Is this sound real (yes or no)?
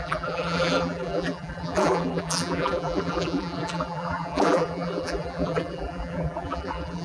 no